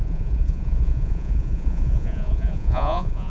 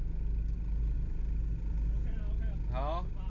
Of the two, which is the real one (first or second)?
second